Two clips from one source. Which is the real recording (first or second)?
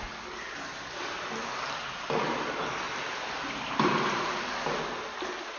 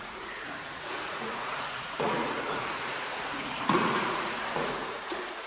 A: first